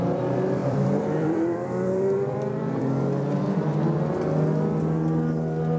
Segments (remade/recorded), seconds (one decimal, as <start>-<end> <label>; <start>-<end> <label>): 0.0-0.6 recorded; 0.6-2.8 remade; 2.8-5.8 recorded